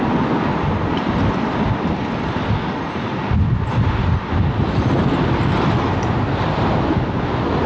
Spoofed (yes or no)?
no